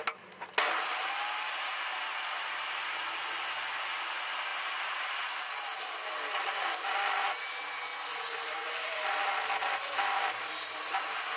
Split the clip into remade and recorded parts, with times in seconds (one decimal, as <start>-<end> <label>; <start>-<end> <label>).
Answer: 0.0-11.4 recorded